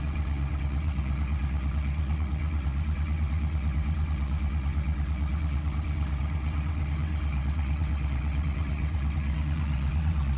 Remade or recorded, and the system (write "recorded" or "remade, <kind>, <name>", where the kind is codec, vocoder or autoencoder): remade, vocoder, WaveNeXt